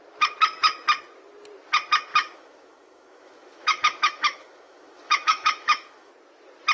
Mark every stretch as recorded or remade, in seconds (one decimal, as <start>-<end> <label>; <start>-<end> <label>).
0.0-2.1 recorded; 2.1-6.1 remade; 6.1-6.7 recorded